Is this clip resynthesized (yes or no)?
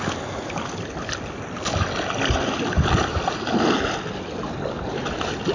no